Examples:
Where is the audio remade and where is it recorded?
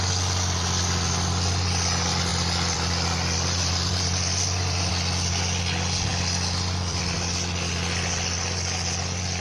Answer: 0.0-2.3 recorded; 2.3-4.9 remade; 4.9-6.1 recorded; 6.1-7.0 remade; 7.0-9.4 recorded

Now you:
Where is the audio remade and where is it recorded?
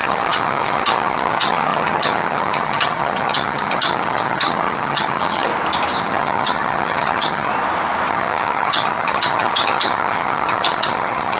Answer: 0.0-5.5 remade; 5.5-6.0 recorded; 6.0-7.5 remade; 7.5-8.1 recorded; 8.1-11.4 remade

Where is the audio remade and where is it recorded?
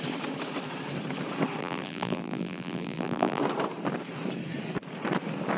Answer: 0.0-1.6 recorded; 1.6-3.4 remade; 3.4-5.6 recorded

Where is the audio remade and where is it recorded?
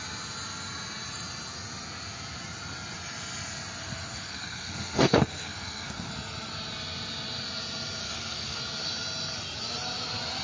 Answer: 0.0-3.8 recorded; 3.8-6.1 remade; 6.1-8.0 recorded; 8.0-8.6 remade; 8.6-10.4 recorded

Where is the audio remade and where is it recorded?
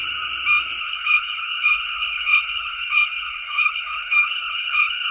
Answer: 0.0-0.8 recorded; 0.8-5.1 remade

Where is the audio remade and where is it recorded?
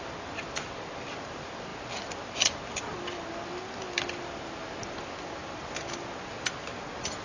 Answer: 0.0-7.2 recorded